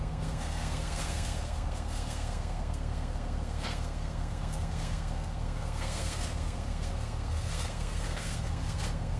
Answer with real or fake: fake